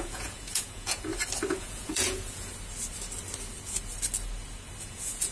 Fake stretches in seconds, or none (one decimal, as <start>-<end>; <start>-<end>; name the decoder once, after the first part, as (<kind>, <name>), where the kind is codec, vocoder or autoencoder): 0.0-1.1 (vocoder, Vocos); 1.6-2.5; 4.8-5.3